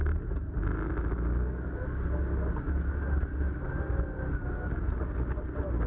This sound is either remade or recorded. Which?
recorded